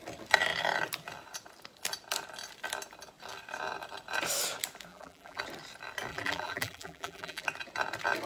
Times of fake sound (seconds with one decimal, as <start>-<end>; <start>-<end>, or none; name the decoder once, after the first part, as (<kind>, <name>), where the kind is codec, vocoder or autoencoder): 4.9-5.4 (vocoder, BigVGAN v2); 6.1-7.4